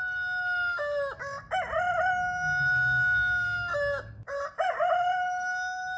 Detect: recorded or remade recorded